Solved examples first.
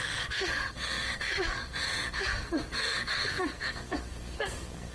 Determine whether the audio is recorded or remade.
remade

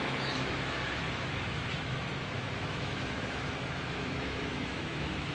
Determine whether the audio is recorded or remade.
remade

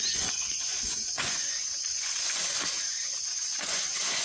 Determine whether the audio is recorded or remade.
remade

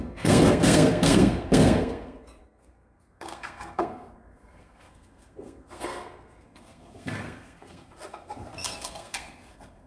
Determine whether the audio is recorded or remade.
remade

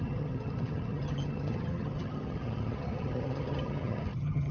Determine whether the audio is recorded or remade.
remade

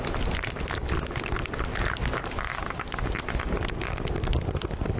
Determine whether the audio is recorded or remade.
recorded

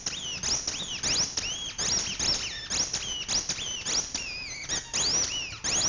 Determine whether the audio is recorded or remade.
recorded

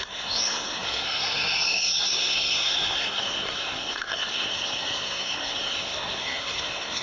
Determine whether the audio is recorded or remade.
remade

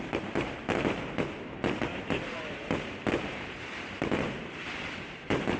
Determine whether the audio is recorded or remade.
remade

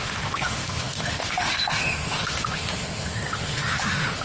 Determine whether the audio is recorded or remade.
remade